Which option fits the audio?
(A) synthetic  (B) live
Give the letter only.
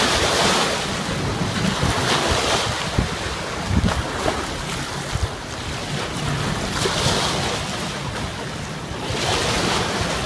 B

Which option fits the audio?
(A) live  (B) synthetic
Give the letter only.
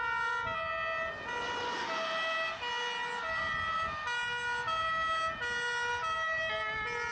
A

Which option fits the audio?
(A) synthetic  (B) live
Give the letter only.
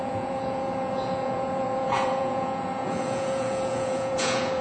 A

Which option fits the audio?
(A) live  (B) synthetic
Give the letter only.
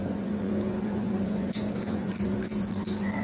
B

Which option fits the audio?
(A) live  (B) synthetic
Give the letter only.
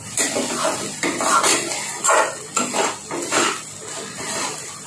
A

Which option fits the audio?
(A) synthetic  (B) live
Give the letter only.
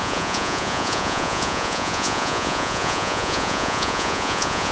A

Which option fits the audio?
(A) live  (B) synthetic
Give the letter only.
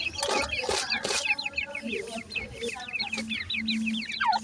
A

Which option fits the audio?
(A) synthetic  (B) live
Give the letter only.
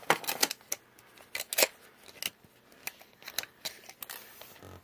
B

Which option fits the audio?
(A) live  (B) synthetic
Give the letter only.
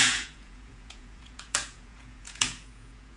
B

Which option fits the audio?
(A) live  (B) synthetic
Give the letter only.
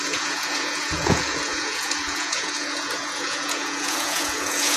B